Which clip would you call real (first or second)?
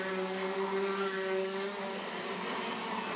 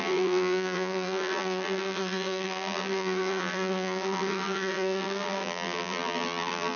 first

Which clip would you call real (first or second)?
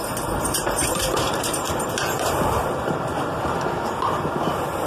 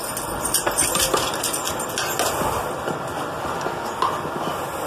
second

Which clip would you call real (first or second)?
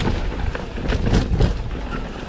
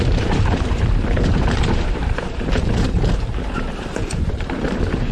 first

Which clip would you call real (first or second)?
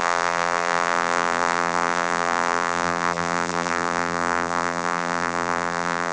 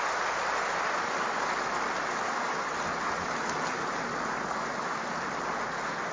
second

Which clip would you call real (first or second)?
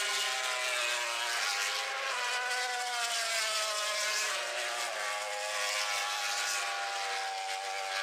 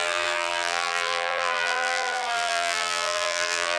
first